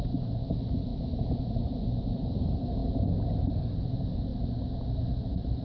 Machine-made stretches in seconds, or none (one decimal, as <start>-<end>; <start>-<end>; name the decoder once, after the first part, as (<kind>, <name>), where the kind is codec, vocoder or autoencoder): 0.0-0.9 (vocoder, BigVGAN v2); 2.1-2.8; 3.4-4.3; 5.1-5.6